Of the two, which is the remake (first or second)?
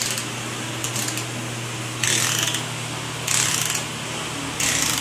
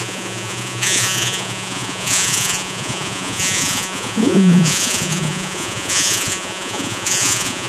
second